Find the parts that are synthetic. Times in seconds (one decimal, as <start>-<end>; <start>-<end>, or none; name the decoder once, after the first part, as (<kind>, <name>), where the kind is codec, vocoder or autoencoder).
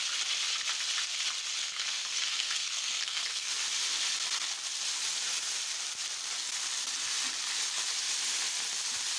1.6-3.5 (codec, SNAC)